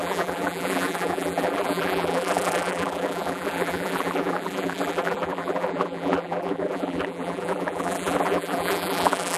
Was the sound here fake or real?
fake